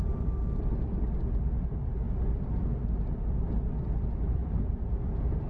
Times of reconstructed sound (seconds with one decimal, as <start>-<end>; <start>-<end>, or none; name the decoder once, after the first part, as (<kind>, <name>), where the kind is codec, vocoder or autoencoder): 4.4-5.0 (vocoder, BigVGAN v2)